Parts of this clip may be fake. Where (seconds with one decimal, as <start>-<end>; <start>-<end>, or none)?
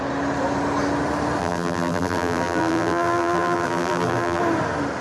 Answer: 1.4-4.4